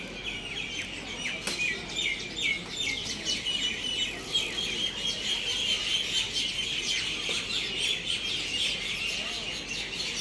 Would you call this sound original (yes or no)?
yes